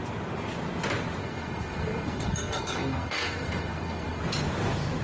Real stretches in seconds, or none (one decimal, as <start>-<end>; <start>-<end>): 0.0-1.2; 4.2-5.0